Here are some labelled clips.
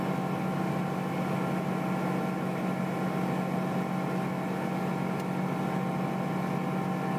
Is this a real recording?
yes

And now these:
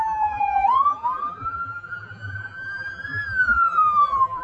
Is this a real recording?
no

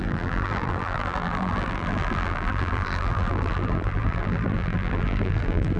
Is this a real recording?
no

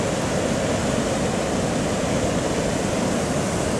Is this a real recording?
yes